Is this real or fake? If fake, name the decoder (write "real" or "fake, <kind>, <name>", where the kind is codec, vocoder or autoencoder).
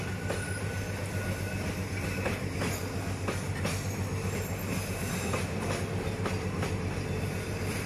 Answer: real